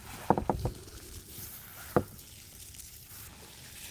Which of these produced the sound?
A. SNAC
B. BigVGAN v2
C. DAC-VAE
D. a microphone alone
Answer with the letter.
D